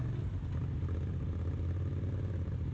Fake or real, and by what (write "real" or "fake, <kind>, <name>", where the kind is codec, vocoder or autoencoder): real